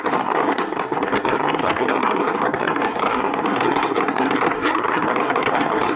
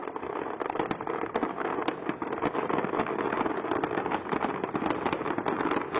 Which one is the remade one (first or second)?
first